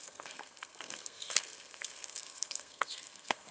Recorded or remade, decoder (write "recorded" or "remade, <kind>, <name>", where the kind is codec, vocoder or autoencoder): remade, codec, SNAC